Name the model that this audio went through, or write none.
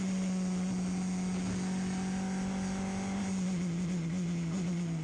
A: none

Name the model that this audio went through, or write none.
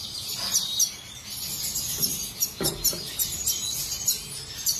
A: vocoder, BigVGAN v2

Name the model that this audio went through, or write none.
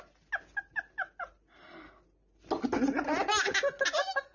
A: none